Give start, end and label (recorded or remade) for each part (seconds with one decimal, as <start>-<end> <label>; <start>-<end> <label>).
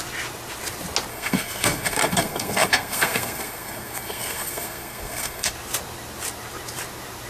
0.0-1.1 recorded; 1.1-5.5 remade; 5.5-7.3 recorded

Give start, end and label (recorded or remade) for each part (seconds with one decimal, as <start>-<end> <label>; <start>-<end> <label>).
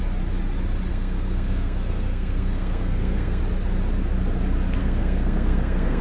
0.0-0.9 recorded; 0.9-3.4 remade; 3.4-4.8 recorded; 4.8-6.0 remade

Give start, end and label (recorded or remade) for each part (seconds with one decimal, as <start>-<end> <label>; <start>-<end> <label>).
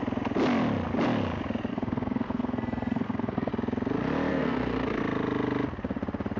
0.0-1.7 recorded; 1.7-3.5 remade; 3.5-4.3 recorded; 4.3-5.0 remade; 5.0-6.4 recorded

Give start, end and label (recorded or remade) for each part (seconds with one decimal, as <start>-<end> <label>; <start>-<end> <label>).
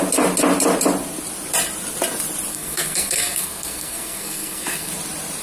0.0-2.5 recorded; 2.5-4.9 remade; 4.9-5.4 recorded